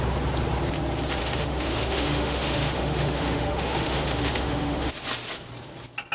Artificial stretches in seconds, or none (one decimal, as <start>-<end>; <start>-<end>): 1.2-4.9